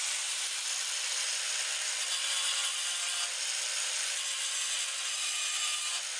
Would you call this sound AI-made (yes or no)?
no